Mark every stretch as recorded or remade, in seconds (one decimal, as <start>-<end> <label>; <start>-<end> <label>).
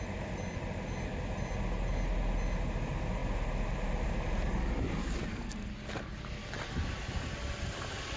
0.0-5.3 recorded; 5.3-5.8 remade; 5.8-8.2 recorded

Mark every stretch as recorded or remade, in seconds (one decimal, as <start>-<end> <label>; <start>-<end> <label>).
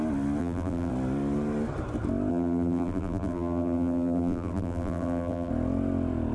0.0-0.4 recorded; 0.4-0.9 remade; 0.9-2.3 recorded; 2.3-5.5 remade; 5.5-6.3 recorded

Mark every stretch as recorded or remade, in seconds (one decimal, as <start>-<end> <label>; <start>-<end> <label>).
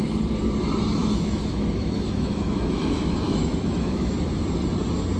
0.0-1.0 recorded; 1.0-4.1 remade; 4.1-5.2 recorded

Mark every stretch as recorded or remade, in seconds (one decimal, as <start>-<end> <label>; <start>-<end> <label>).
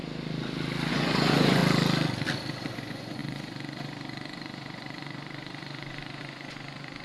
0.0-0.9 recorded; 0.9-1.6 remade; 1.6-2.7 recorded; 2.7-7.0 remade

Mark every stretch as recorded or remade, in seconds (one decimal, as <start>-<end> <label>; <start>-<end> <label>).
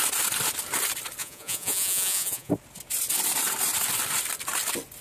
0.0-1.2 recorded; 1.2-2.5 remade; 2.5-5.0 recorded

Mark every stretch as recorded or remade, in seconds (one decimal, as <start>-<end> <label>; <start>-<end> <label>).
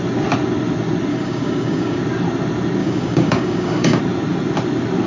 0.0-1.1 recorded; 1.1-2.0 remade; 2.0-2.8 recorded; 2.8-4.0 remade; 4.0-5.1 recorded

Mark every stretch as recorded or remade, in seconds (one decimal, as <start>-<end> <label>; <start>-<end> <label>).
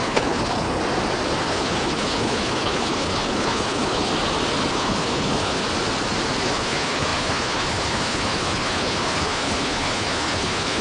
0.0-0.8 remade; 0.8-1.4 recorded; 1.4-4.1 remade; 4.1-4.7 recorded; 4.7-5.6 remade; 5.6-6.4 recorded; 6.4-10.8 remade